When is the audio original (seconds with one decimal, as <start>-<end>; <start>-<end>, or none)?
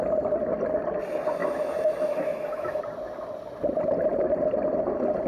0.0-1.4; 2.8-5.3